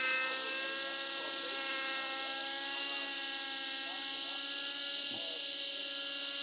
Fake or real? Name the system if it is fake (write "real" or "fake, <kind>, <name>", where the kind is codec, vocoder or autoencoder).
real